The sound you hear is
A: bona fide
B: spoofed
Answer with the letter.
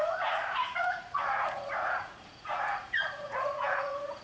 B